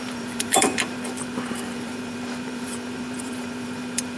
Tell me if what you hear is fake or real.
fake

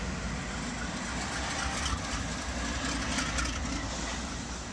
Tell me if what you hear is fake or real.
real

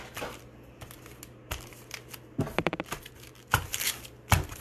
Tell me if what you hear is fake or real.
real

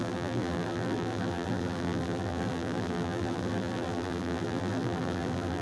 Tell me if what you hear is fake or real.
fake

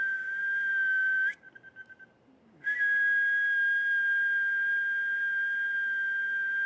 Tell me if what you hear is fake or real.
real